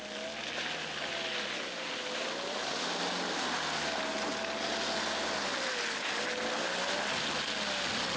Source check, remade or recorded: recorded